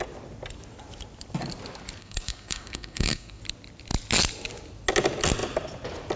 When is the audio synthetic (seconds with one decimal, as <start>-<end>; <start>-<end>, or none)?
2.0-3.4